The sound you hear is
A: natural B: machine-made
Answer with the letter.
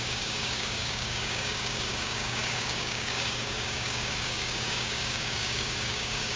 B